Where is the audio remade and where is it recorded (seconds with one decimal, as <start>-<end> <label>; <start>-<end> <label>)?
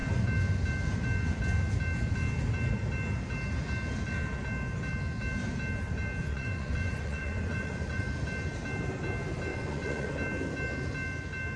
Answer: 0.0-6.2 recorded; 6.2-8.0 remade; 8.0-9.5 recorded; 9.5-10.1 remade; 10.1-11.6 recorded